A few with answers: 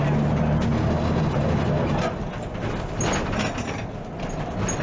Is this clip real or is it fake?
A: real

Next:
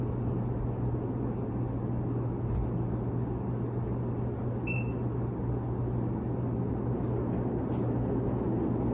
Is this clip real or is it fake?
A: real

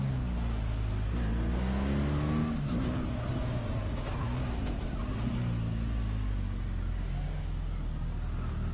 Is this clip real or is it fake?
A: real